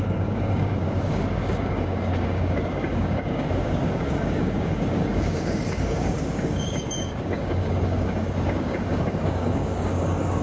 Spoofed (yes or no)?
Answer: yes